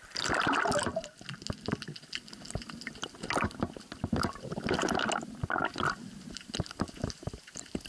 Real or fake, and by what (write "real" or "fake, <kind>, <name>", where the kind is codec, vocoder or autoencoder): real